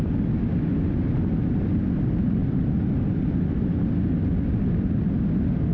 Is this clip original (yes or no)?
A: yes